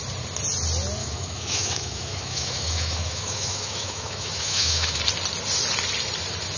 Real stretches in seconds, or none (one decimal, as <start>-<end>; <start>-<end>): 0.0-1.0; 5.0-6.6